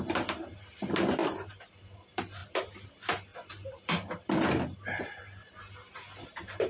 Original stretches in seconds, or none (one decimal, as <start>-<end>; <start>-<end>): 0.0-1.2; 1.8-2.4; 2.9-3.3; 4.6-6.7